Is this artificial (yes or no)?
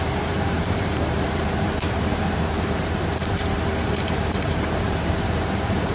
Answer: yes